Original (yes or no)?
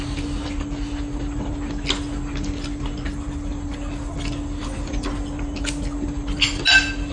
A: yes